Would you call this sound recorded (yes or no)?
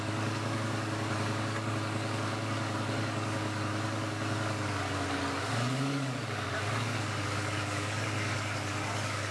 no